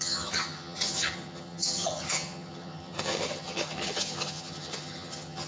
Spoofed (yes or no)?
yes